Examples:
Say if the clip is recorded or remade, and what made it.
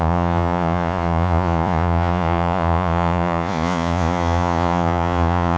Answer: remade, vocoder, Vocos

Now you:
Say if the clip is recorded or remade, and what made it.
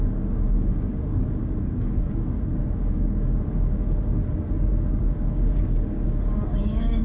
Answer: remade, codec, DAC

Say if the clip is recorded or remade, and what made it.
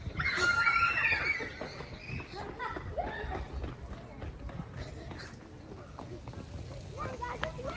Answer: recorded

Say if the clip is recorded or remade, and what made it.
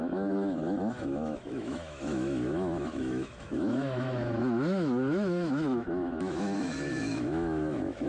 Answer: remade, autoencoder, DAC-VAE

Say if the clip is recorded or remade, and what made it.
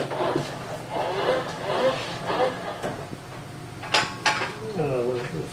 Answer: recorded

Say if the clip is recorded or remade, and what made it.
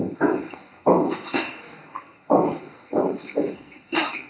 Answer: remade, codec, SNAC